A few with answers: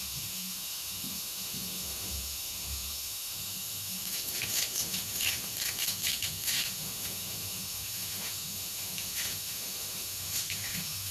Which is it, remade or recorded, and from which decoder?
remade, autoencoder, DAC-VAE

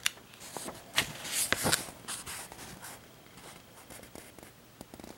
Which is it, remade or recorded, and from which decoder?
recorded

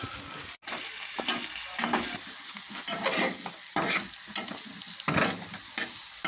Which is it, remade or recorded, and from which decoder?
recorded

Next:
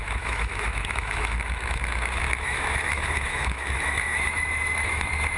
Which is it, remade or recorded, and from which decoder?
remade, autoencoder, DAC-VAE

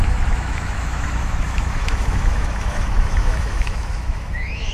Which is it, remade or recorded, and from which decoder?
remade, autoencoder, DAC-VAE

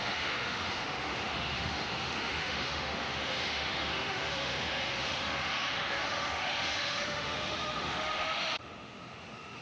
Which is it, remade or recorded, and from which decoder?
remade, autoencoder, DAC-VAE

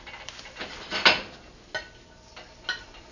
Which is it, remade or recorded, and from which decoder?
recorded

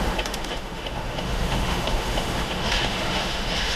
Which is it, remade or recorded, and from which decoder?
remade, autoencoder, DAC-VAE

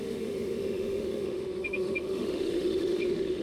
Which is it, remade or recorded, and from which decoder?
remade, autoencoder, DAC-VAE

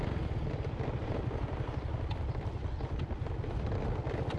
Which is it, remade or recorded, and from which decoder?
recorded